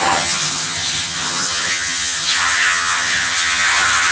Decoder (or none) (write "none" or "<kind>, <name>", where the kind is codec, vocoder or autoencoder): vocoder, HiFi-GAN